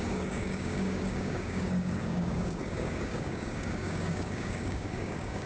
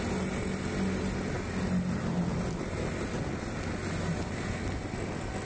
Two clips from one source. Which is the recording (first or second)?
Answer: second